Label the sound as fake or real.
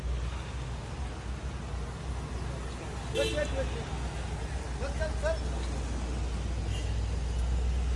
real